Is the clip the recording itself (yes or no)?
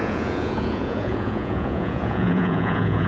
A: no